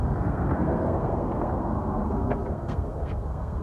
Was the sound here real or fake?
fake